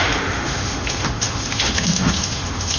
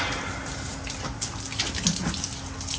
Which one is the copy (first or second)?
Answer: first